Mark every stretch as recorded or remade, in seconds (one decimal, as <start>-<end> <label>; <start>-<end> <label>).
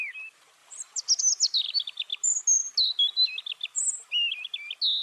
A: 0.0-5.0 recorded